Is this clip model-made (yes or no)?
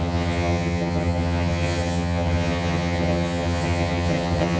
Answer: yes